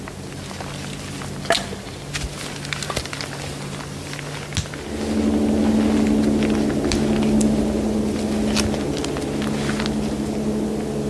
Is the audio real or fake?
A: real